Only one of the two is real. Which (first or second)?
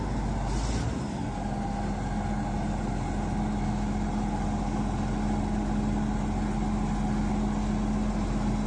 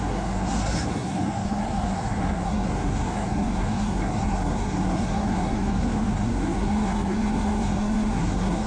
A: first